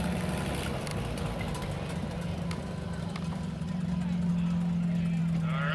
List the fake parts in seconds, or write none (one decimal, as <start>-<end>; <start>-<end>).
none